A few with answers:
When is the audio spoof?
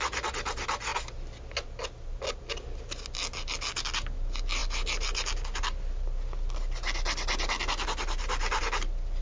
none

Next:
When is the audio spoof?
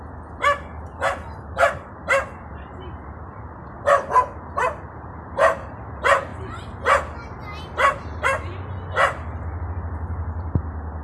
none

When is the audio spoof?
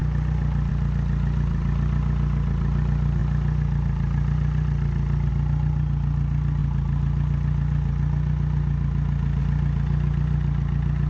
none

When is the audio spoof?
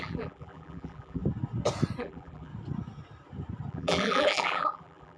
0.0-1.2 (vocoder, BigVGAN v2); 2.0-2.5; 3.7-5.2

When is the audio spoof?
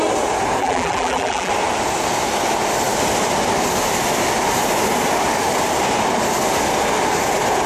0.6-1.5 (vocoder, BigVGAN v2)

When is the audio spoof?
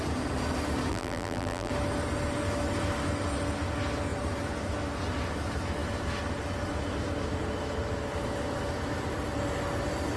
0.9-1.7 (vocoder, BigVGAN v2)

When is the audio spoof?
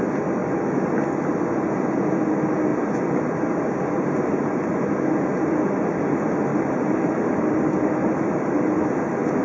2.7-3.6 (vocoder, BigVGAN v2); 6.5-7.1; 8.0-8.7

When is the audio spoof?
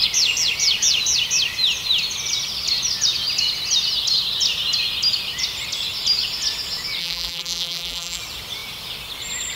7.0-8.2 (vocoder, BigVGAN v2)